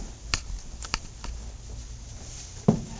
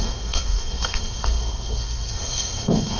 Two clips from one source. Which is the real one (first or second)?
first